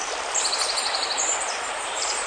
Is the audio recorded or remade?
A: remade